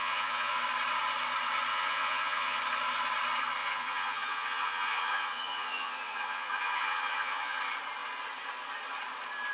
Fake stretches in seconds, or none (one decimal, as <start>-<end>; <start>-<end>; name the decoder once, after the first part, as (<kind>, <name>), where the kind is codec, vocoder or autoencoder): 0.0-0.6 (vocoder, Vocos); 1.7-2.6; 3.6-7.6